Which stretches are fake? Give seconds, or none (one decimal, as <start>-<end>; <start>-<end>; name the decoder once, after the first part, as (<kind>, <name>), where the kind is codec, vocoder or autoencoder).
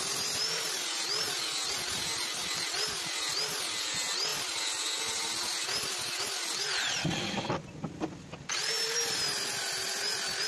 none